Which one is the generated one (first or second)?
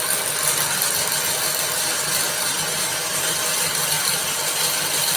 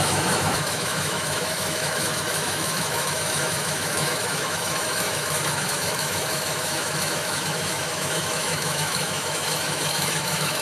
second